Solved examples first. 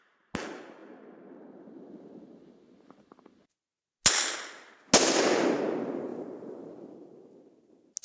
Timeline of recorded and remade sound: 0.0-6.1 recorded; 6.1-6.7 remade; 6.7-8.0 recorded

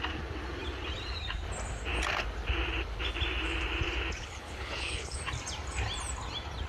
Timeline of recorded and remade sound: 0.0-4.2 recorded; 4.2-5.2 remade; 5.2-6.7 recorded

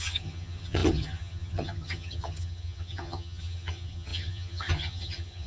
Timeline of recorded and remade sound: 0.0-5.5 remade

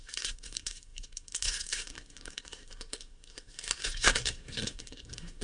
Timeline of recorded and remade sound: 0.0-5.4 remade

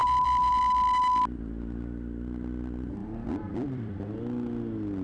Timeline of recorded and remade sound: 0.0-0.5 remade; 0.5-3.0 recorded; 3.0-4.0 remade; 4.0-5.0 recorded

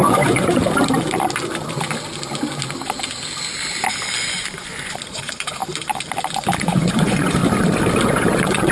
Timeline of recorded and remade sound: 0.0-0.6 remade; 0.6-4.3 recorded; 4.3-5.6 remade; 5.6-6.6 recorded; 6.6-7.4 remade; 7.4-8.0 recorded; 8.0-8.7 remade

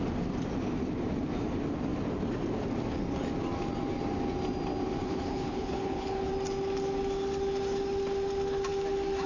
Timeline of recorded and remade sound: 0.0-5.0 recorded; 5.0-6.3 remade; 6.3-9.3 recorded